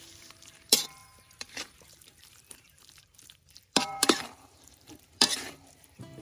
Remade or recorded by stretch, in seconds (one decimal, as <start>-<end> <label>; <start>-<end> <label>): 0.0-6.2 remade

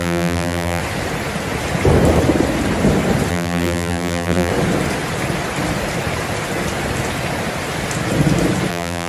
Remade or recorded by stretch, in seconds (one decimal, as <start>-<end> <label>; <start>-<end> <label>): 0.0-0.8 remade; 0.8-3.3 recorded; 3.3-4.5 remade; 4.5-8.7 recorded; 8.7-9.1 remade

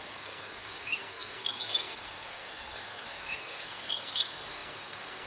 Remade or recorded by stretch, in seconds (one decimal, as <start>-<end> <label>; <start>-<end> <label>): 0.0-5.3 remade

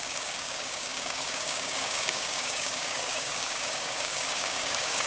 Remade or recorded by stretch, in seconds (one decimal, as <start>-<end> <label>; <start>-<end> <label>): 0.0-5.1 remade

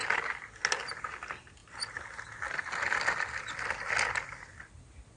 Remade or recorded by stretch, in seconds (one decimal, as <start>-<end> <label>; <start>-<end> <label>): 0.0-5.2 recorded

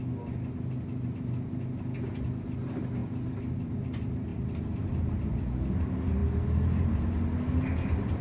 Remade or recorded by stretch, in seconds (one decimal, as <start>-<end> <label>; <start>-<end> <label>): 0.0-3.0 recorded; 3.0-3.7 remade; 3.7-4.3 recorded; 4.3-5.7 remade; 5.7-8.2 recorded

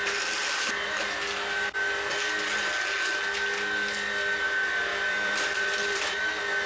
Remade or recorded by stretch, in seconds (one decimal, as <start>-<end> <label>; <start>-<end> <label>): 0.0-4.9 recorded; 4.9-6.3 remade; 6.3-6.7 recorded

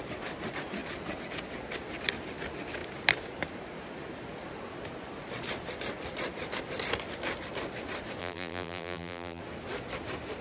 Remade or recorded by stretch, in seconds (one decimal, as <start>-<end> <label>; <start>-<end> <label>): 0.0-8.2 recorded; 8.2-9.4 remade; 9.4-10.4 recorded